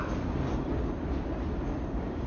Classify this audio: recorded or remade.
recorded